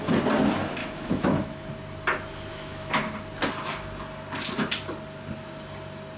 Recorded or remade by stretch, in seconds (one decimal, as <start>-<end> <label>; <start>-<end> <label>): 0.0-0.8 recorded; 0.8-1.7 remade; 1.7-2.5 recorded; 2.5-3.1 remade; 3.1-6.2 recorded